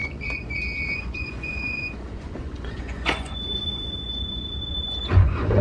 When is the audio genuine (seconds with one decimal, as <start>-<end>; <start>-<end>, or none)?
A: none